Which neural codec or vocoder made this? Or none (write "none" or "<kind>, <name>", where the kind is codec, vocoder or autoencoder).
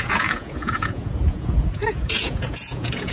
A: vocoder, Vocos